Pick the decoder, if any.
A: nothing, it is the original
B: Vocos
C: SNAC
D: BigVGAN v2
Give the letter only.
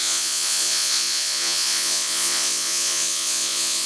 B